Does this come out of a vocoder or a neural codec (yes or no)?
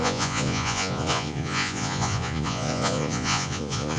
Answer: yes